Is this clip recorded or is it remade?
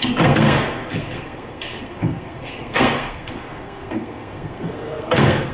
remade